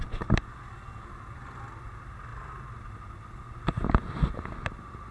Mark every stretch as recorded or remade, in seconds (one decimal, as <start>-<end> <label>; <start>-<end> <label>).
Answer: 0.0-5.1 recorded